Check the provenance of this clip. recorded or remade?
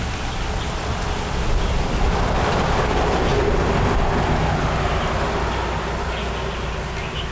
recorded